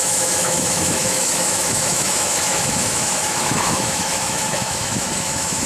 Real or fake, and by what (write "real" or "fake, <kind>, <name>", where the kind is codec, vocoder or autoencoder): fake, autoencoder, DAC-VAE